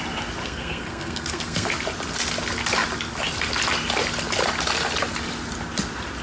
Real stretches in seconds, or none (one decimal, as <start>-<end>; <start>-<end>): 0.0-0.4; 1.7-6.2